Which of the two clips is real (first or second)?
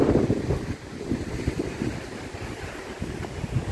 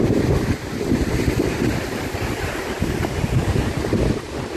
second